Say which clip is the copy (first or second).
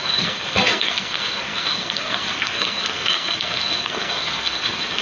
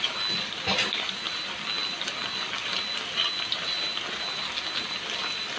first